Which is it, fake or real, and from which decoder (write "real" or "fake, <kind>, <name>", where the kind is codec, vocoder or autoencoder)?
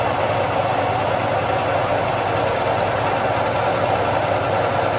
real